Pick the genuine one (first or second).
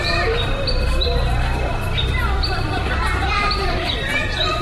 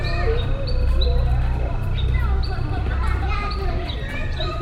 second